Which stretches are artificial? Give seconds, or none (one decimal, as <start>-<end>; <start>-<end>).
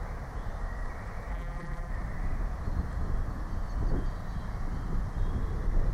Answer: 1.3-1.9